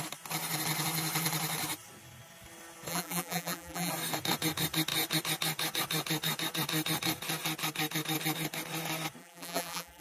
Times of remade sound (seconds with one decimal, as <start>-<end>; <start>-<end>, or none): 2.9-3.9; 9.2-10.0